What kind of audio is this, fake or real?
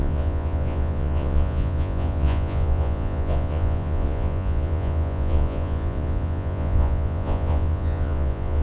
fake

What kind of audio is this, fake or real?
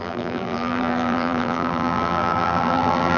fake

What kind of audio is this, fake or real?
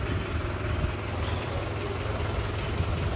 real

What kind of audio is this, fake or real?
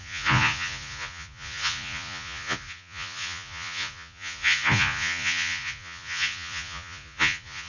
fake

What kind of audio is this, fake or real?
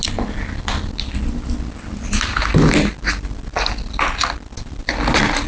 real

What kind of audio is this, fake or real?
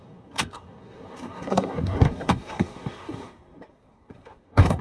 fake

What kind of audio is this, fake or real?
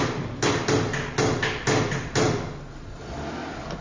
real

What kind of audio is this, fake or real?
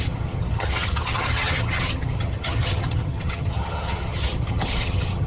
fake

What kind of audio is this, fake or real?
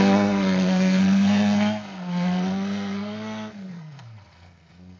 fake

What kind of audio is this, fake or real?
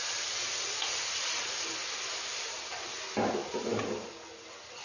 real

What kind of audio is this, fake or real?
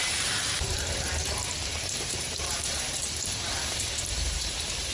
fake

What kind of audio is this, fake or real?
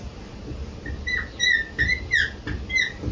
real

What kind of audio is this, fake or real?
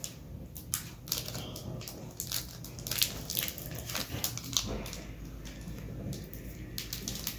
real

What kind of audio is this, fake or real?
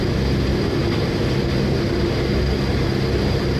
real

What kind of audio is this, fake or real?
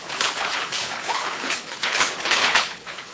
fake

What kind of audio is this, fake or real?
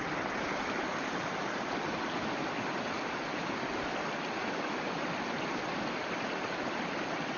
real